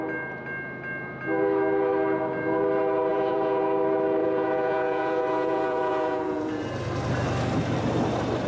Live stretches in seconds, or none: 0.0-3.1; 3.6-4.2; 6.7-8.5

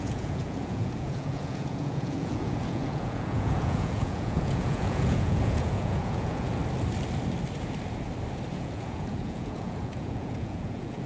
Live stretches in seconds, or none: 6.6-8.5

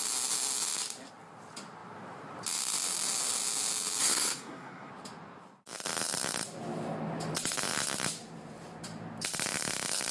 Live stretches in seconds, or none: 0.0-4.0; 4.9-10.1

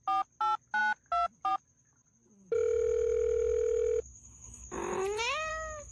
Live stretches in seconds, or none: 0.0-5.9

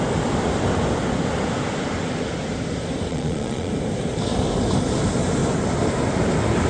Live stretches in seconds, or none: 0.0-3.1; 3.7-6.7

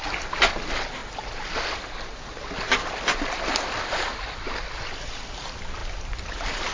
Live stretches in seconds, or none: 0.0-2.8; 3.9-5.8

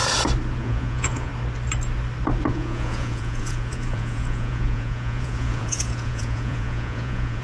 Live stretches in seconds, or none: 0.0-0.6; 1.3-2.5

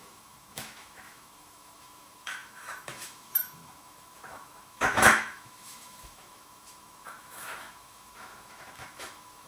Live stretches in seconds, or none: none